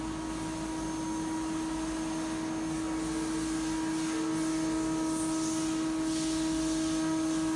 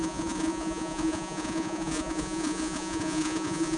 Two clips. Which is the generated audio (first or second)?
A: second